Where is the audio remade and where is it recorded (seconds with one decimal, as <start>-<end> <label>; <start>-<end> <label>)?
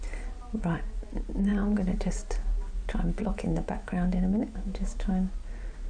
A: 0.0-3.2 recorded; 3.2-5.3 remade; 5.3-5.9 recorded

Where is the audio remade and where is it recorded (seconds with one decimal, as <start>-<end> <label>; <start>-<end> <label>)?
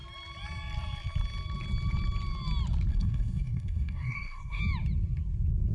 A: 0.0-2.9 recorded; 2.9-4.6 remade; 4.6-5.7 recorded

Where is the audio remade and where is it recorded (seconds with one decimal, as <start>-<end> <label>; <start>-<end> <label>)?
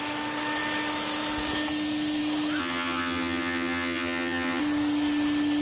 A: 0.0-2.6 recorded; 2.6-4.6 remade; 4.6-5.6 recorded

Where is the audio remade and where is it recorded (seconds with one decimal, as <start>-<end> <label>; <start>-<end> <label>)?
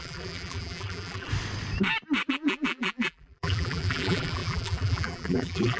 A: 0.0-1.3 remade; 1.3-2.3 recorded; 2.3-5.8 remade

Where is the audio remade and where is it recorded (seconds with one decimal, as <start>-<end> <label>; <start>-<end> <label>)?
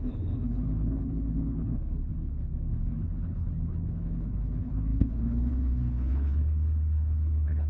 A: 0.0-7.7 remade